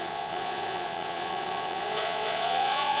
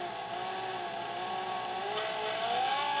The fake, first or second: first